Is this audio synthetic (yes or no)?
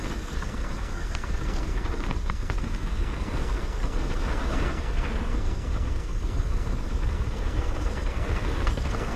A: yes